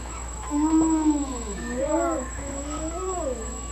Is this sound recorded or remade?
remade